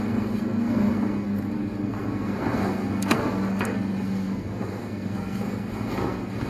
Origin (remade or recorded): remade